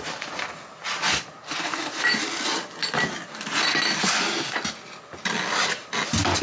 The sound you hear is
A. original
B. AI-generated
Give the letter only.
A